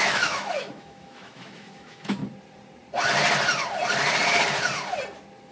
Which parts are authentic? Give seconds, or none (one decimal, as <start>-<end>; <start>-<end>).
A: 2.2-5.5